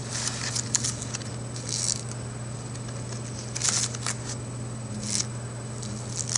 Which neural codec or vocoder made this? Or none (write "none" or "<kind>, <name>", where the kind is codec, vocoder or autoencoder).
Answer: none